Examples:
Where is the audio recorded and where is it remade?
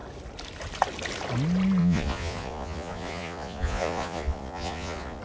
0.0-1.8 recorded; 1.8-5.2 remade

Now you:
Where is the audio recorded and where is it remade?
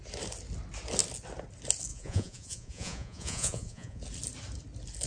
0.0-1.9 recorded; 1.9-4.0 remade; 4.0-5.1 recorded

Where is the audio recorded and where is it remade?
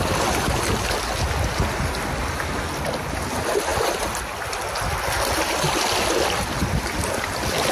0.0-7.7 recorded